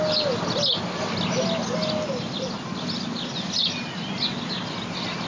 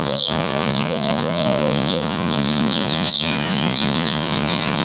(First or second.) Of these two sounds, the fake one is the second